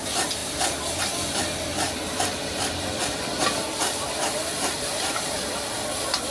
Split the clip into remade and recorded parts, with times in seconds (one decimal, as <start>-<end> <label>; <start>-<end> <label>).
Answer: 0.0-6.3 recorded